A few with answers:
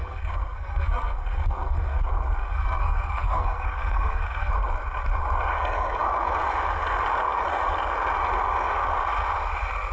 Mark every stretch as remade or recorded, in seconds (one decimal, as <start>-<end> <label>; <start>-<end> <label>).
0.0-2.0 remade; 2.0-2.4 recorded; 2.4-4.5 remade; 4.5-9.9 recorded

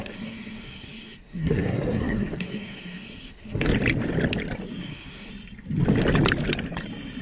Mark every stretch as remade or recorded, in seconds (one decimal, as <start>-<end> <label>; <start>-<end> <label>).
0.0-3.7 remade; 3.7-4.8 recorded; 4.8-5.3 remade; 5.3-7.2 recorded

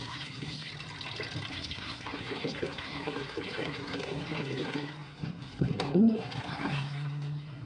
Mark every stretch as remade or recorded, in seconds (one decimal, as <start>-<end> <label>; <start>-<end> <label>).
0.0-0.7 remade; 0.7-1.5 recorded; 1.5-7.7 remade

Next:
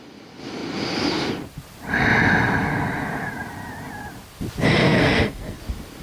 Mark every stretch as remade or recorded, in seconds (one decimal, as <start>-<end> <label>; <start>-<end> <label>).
0.0-4.8 recorded; 4.8-5.6 remade; 5.6-6.0 recorded